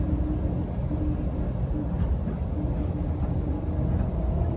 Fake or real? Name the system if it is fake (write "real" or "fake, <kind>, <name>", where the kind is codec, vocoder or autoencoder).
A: real